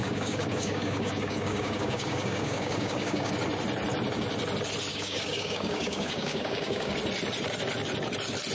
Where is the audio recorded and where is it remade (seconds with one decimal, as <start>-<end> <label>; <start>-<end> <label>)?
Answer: 0.0-3.3 remade; 3.3-4.9 recorded; 4.9-6.9 remade; 6.9-8.5 recorded